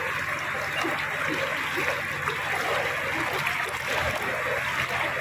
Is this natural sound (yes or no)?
yes